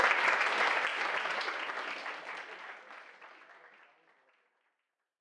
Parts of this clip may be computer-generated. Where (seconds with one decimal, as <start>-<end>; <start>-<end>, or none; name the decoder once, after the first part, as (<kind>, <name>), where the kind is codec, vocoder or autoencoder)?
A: none

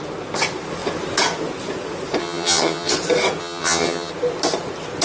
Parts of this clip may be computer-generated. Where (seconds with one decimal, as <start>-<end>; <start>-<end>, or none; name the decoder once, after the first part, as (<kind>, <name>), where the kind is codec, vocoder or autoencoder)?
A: 2.2-2.9 (vocoder, HiFi-GAN); 3.4-4.1

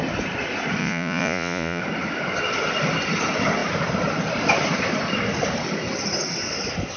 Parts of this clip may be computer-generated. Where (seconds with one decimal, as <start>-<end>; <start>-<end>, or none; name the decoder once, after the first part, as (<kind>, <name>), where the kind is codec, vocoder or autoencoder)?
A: 0.8-1.8 (vocoder, Vocos)

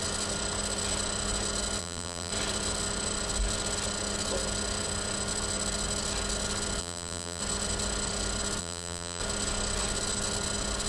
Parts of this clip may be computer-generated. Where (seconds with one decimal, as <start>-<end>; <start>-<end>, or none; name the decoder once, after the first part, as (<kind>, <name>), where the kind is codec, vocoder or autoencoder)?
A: 1.8-2.3 (vocoder, BigVGAN v2); 6.8-7.4; 8.6-9.2

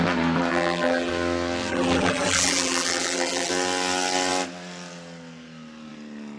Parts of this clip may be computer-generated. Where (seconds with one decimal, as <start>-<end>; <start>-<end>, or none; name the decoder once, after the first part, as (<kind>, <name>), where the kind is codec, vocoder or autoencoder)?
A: 0.5-1.1 (vocoder, BigVGAN v2); 1.7-3.5